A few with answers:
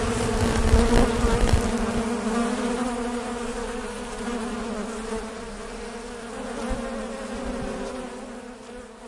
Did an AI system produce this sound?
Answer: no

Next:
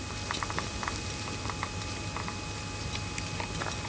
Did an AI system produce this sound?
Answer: no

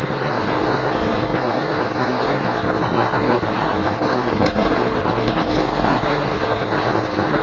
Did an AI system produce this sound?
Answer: yes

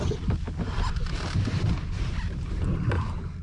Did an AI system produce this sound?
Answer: no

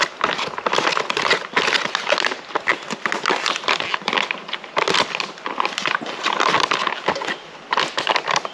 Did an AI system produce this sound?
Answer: no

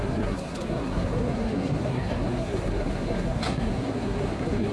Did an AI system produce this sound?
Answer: yes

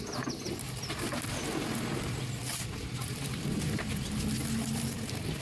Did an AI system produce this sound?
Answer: no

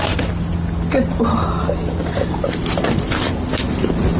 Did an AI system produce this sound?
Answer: no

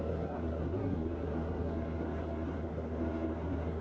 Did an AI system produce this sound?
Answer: yes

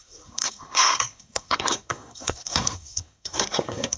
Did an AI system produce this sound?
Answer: yes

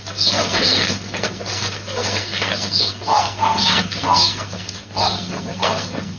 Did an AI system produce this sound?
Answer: yes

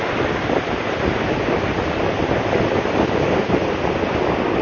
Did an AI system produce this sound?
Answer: no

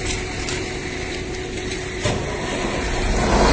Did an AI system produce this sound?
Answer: no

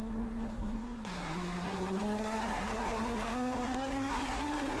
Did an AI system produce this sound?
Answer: yes